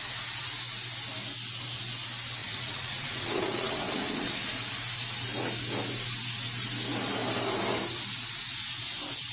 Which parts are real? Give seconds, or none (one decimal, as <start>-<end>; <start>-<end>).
0.0-2.4; 4.3-9.3